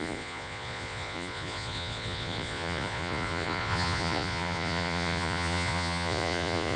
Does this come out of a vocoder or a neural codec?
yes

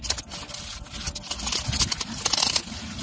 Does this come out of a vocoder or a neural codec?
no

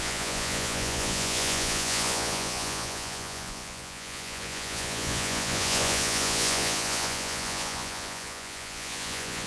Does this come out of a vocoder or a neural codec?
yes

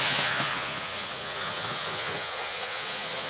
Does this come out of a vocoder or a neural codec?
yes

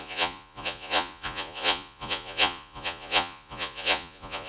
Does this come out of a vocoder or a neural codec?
yes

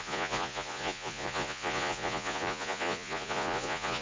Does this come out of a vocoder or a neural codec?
yes